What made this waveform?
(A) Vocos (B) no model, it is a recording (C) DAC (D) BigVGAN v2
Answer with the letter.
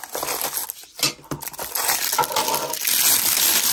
B